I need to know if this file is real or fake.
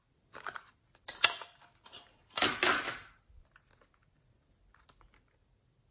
real